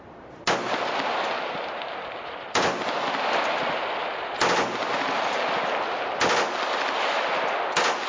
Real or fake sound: real